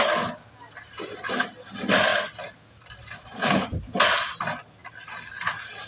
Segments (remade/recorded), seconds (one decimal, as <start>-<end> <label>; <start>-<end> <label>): 0.0-5.9 recorded